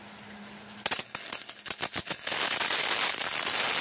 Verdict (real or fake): real